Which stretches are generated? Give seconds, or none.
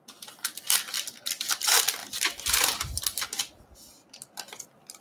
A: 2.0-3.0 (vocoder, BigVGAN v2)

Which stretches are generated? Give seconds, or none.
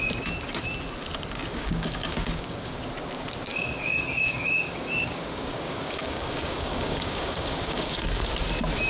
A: 1.5-2.8 (codec, DAC); 3.5-8.0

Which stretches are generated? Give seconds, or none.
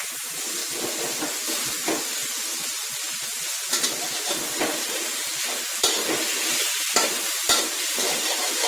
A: 0.0-2.2 (vocoder, BigVGAN v2); 7.1-8.7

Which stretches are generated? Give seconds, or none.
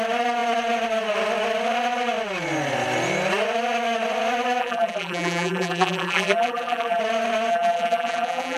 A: 4.6-7.0 (vocoder, BigVGAN v2); 7.5-8.6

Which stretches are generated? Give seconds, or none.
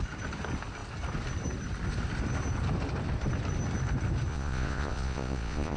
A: 4.3-5.8 (vocoder, Vocos)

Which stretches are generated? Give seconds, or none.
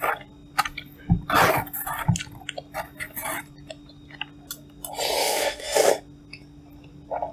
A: 5.2-5.9 (autoencoder, DAC-VAE)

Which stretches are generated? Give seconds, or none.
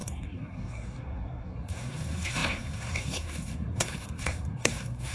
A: 0.0-5.1 (codec, SNAC)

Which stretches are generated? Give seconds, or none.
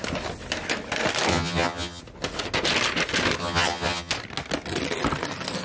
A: 1.3-2.0 (vocoder, HiFi-GAN); 3.4-4.1